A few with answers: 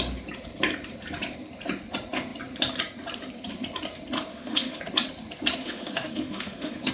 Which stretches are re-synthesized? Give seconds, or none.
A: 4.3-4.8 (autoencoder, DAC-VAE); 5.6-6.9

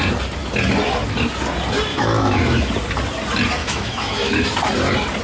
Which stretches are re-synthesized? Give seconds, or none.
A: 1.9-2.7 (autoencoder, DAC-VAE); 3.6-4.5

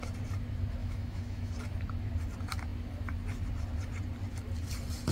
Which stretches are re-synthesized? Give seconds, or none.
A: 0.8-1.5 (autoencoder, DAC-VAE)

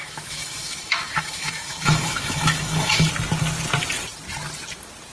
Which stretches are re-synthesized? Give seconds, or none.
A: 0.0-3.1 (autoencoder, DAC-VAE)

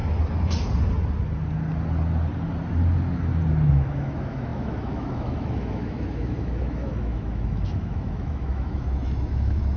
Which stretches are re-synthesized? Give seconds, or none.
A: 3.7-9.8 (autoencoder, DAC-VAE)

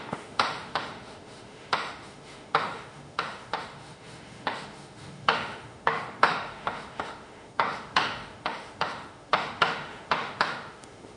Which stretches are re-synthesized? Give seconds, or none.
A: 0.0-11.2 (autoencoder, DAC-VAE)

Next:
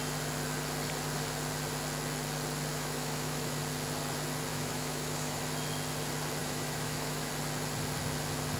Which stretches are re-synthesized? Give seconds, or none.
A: 2.7-3.6 (autoencoder, DAC-VAE); 4.5-5.4; 6.4-7.3

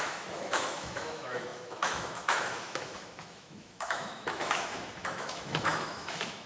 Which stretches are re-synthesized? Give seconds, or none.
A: 0.0-6.5 (autoencoder, DAC-VAE)